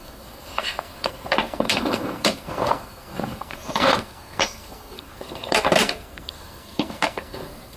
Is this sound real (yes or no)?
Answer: no